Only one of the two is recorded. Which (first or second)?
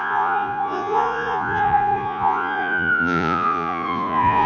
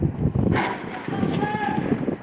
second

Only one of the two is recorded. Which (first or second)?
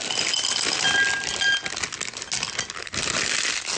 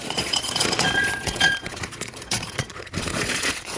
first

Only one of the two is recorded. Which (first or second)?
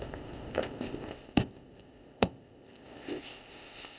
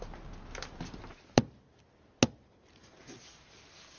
second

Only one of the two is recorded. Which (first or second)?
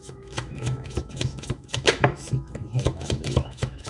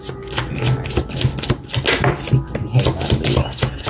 second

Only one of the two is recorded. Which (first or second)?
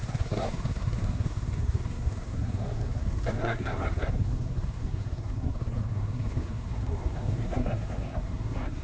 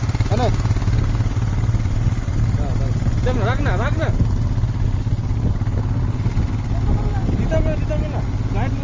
second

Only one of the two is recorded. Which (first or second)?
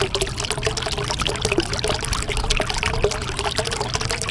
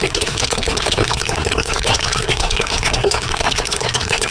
first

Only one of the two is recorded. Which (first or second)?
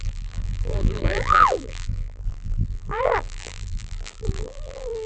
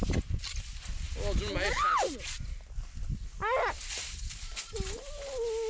second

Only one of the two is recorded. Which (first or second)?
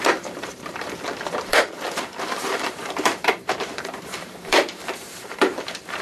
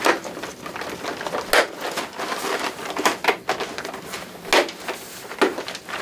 second